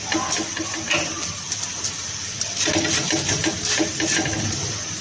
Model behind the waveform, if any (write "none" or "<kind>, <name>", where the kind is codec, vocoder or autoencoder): none